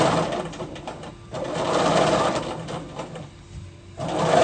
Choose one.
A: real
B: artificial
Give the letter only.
A